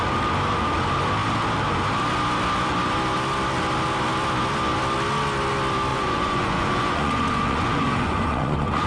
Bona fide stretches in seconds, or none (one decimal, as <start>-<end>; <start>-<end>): 0.0-5.9